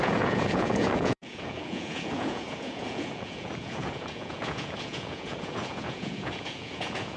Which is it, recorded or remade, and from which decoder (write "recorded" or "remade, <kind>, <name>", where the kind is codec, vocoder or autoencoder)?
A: remade, vocoder, Vocos